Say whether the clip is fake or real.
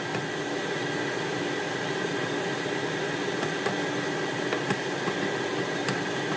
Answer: real